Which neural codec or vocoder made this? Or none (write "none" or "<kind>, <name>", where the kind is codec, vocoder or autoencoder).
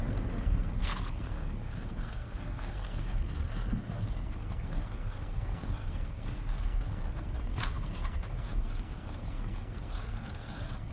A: codec, SNAC